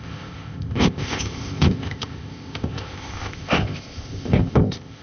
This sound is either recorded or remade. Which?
remade